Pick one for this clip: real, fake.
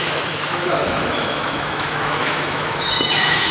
fake